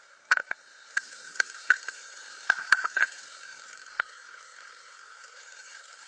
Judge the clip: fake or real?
fake